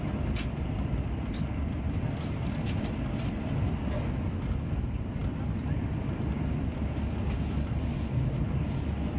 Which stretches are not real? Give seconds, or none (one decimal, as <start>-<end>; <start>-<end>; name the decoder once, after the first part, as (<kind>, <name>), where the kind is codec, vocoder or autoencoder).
none